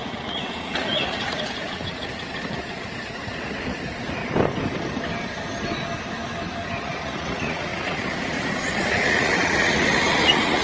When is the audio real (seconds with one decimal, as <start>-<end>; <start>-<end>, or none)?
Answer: 4.2-6.8